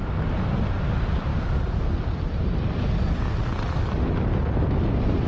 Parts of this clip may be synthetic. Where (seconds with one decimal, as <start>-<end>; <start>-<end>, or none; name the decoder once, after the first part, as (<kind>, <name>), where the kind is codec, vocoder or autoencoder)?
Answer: none